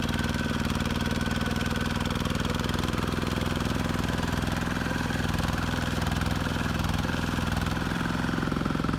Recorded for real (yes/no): no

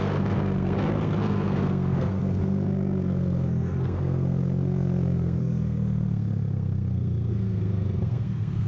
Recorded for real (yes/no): no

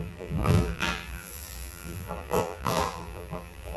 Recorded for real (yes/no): no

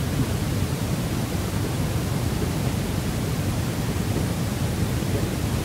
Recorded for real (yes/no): no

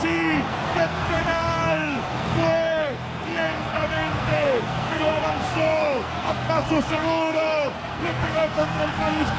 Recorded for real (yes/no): no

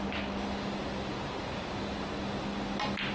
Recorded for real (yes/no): yes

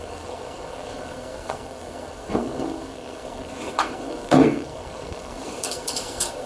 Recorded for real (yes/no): no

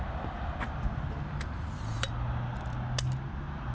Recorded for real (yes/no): yes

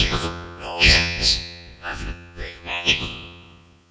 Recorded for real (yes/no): no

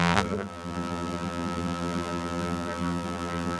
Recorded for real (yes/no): no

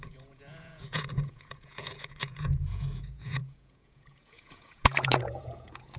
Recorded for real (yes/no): no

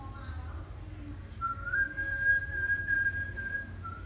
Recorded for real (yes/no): yes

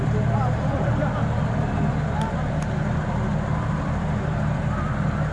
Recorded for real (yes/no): yes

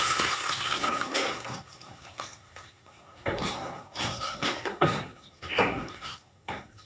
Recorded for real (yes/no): no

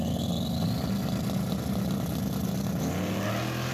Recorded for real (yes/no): yes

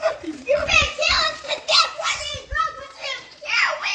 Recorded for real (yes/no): no